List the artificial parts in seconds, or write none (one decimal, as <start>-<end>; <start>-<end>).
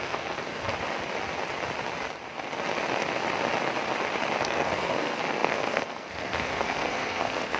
0.0-0.7; 4.4-7.6